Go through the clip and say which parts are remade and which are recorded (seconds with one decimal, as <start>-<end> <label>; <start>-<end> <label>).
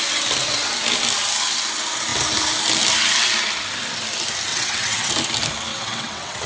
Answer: 0.0-4.5 recorded; 4.5-5.1 remade; 5.1-5.7 recorded; 5.7-6.5 remade